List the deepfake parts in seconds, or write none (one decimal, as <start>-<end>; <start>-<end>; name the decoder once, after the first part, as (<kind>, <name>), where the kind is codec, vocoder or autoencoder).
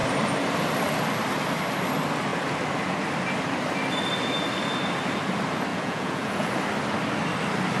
5.7-6.5 (vocoder, Vocos)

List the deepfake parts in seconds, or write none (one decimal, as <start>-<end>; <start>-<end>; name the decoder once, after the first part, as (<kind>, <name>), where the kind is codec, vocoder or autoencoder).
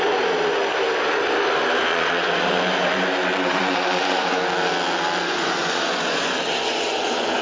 1.9-2.6 (vocoder, Vocos); 3.3-4.4; 5.2-7.4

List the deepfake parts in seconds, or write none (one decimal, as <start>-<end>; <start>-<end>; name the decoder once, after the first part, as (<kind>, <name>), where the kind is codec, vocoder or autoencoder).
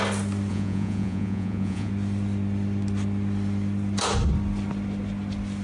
0.5-1.9 (vocoder, Vocos)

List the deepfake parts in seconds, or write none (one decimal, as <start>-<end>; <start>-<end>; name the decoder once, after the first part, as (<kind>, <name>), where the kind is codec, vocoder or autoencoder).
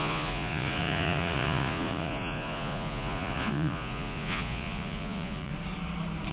0.0-5.5 (vocoder, Vocos)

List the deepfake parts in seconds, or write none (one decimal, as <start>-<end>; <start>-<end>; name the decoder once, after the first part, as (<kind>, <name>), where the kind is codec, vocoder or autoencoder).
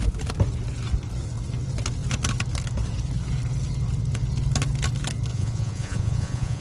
5.3-6.6 (vocoder, Vocos)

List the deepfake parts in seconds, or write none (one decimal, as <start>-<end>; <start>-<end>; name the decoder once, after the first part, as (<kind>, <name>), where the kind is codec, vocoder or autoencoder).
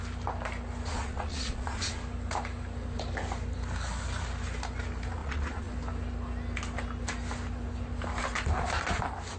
0.9-1.9 (vocoder, Vocos); 5.2-5.7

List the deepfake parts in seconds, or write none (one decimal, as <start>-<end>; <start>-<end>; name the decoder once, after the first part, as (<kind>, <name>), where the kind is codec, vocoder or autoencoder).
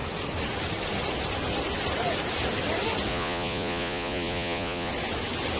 3.1-4.9 (vocoder, Vocos)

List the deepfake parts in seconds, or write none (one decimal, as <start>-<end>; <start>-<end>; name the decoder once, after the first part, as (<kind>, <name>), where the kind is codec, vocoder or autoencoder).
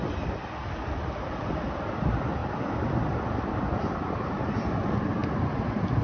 none